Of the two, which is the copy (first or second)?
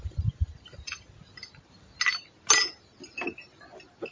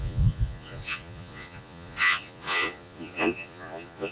second